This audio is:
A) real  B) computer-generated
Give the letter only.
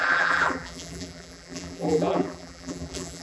B